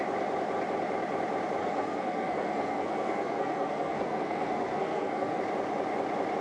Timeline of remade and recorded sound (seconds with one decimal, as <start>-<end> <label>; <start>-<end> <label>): 0.0-1.6 recorded; 1.6-5.4 remade; 5.4-6.4 recorded